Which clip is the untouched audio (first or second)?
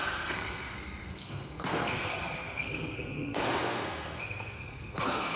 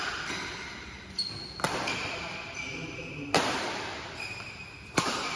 second